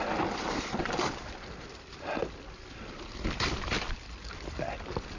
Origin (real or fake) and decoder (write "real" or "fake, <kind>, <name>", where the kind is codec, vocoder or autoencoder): real